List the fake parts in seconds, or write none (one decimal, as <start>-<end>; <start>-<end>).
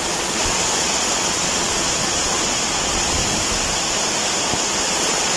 0.0-3.2; 4.8-5.4